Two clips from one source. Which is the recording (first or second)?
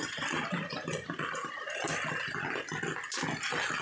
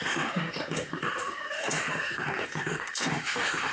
first